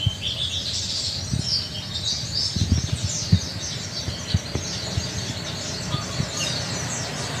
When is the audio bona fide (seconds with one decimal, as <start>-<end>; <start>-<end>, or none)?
0.0-7.4